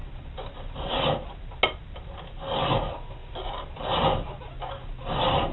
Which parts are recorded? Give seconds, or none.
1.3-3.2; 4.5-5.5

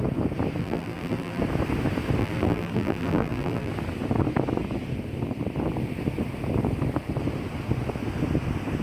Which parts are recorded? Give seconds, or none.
0.0-0.6; 1.4-2.2; 3.7-8.8

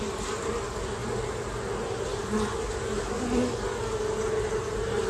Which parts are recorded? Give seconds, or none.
0.0-5.1